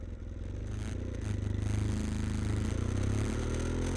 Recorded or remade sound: recorded